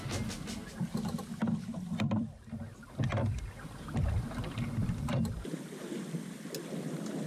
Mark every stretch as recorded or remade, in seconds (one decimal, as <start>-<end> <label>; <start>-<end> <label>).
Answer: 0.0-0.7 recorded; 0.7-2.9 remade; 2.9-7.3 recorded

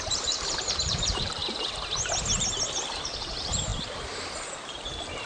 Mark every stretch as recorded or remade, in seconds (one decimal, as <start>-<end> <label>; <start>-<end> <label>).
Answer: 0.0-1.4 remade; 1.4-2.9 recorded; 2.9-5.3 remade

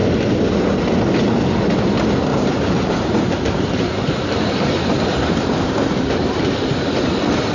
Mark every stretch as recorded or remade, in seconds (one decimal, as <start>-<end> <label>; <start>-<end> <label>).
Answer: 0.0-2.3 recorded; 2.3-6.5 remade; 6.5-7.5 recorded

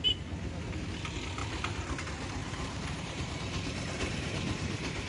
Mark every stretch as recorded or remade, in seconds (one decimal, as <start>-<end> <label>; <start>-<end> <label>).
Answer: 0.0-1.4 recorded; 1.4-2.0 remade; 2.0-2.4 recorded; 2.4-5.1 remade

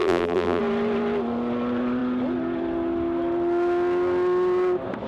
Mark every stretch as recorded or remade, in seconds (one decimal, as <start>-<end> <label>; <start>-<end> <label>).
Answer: 0.0-0.6 remade; 0.6-5.1 recorded

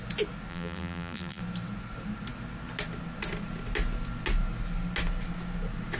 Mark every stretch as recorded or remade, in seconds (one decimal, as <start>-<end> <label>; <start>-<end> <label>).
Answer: 0.0-0.5 recorded; 0.5-1.4 remade; 1.4-6.0 recorded

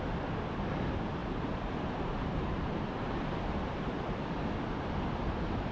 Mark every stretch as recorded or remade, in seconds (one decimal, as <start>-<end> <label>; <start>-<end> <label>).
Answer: 0.0-1.2 recorded; 1.2-4.3 remade; 4.3-5.7 recorded

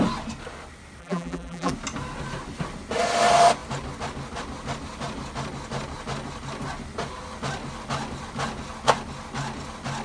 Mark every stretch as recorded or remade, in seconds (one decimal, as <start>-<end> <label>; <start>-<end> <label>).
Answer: 0.0-1.0 recorded; 1.0-1.7 remade; 1.7-10.0 recorded